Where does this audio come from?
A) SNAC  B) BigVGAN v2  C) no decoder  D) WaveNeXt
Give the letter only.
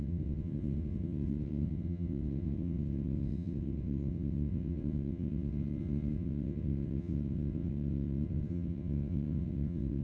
D